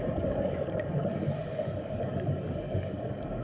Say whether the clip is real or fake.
fake